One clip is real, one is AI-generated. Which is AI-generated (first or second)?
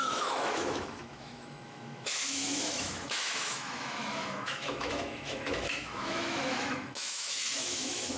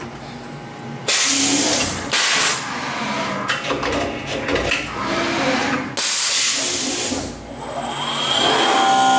first